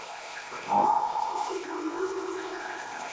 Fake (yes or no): yes